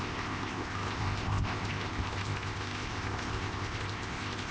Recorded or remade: remade